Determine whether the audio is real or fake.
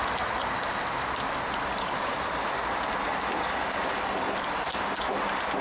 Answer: real